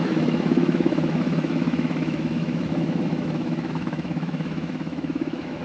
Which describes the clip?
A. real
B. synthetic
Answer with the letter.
B